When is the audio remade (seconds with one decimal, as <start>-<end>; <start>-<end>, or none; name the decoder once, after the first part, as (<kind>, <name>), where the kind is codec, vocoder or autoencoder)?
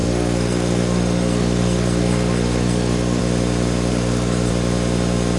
0.0-3.2 (codec, SNAC); 3.9-4.5